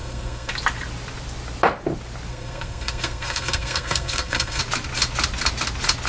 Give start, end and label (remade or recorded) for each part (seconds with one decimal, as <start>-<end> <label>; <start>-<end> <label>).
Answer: 0.0-0.5 remade; 0.5-2.3 recorded; 2.3-4.6 remade; 4.6-6.1 recorded